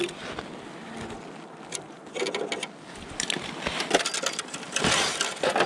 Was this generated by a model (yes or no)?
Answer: no